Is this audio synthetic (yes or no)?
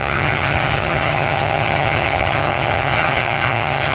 yes